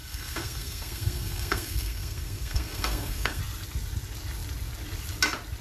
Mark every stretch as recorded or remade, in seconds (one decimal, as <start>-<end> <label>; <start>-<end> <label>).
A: 0.0-3.4 remade; 3.4-5.6 recorded